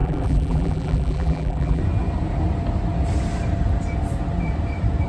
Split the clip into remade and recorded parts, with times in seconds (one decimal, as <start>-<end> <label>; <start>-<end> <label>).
0.0-1.8 remade; 1.8-5.1 recorded